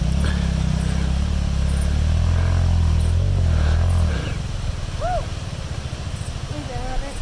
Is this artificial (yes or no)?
no